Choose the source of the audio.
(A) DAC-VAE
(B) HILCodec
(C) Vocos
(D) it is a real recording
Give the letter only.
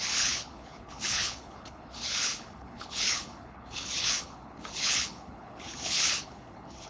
B